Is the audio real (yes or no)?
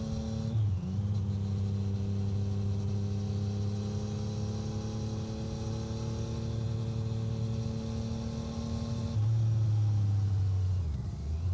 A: yes